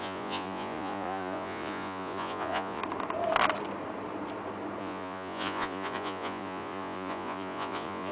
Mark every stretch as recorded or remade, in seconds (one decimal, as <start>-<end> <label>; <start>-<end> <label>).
0.0-2.8 remade; 2.8-4.8 recorded; 4.8-8.1 remade